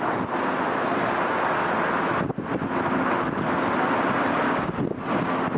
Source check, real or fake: real